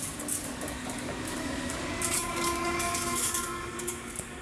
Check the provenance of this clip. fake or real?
fake